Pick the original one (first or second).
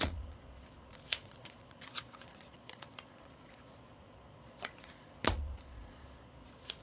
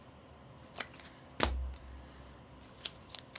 second